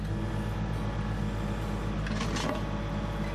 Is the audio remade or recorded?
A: recorded